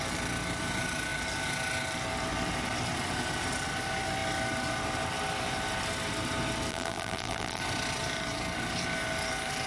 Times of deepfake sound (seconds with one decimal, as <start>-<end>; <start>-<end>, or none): 6.7-7.6